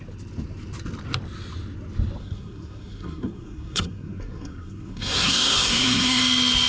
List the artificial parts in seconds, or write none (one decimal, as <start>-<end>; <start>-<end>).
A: 2.2-6.2